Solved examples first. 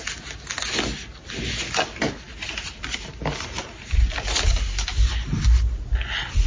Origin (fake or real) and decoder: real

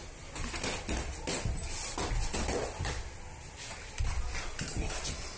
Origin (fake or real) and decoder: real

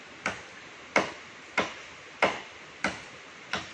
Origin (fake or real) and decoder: real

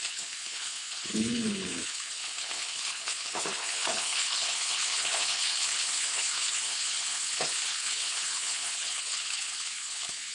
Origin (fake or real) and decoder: fake, codec, HILCodec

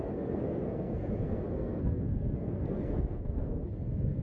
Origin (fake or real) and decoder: fake, codec, SNAC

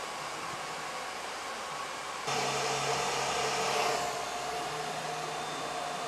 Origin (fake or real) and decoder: real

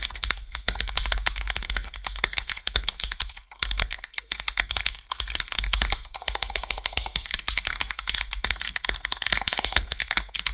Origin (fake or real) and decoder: fake, codec, SNAC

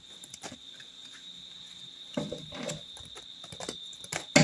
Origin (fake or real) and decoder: real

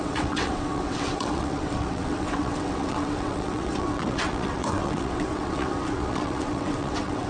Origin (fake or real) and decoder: fake, vocoder, WaveNeXt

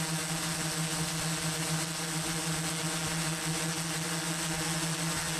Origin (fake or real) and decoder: real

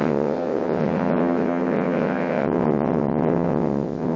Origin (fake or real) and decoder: fake, vocoder, WaveNeXt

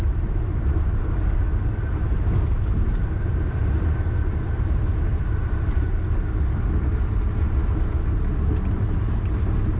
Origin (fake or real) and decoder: real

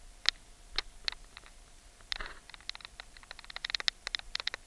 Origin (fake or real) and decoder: real